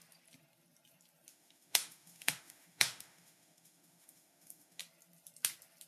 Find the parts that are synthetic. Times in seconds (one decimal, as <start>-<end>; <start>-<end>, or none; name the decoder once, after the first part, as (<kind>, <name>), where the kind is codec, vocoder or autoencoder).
1.3-4.8 (autoencoder, DAC-VAE)